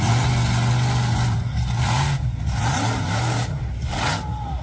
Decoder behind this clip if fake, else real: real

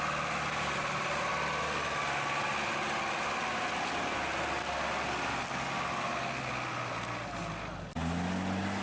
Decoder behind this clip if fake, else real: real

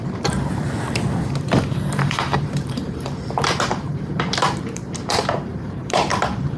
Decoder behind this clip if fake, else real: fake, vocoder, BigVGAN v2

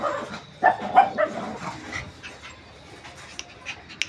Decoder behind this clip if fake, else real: real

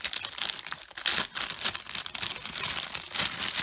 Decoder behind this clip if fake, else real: real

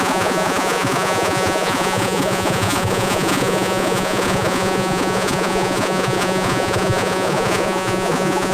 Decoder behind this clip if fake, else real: fake, vocoder, Vocos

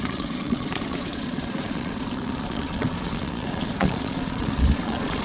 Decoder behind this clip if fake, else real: fake, vocoder, Vocos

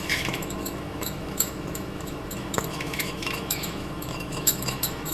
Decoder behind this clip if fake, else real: fake, autoencoder, DAC-VAE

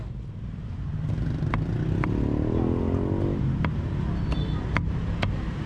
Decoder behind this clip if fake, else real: real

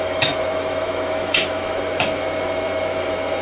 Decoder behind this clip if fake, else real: fake, autoencoder, DAC-VAE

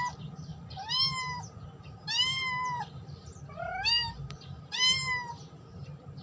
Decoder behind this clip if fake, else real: real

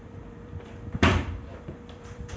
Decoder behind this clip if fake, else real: fake, vocoder, BigVGAN v2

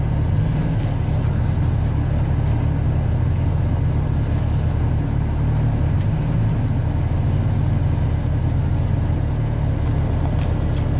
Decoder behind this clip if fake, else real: real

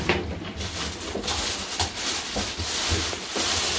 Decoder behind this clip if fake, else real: real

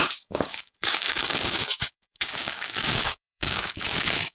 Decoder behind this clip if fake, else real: fake, codec, DAC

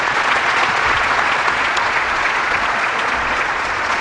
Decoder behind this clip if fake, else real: fake, vocoder, Vocos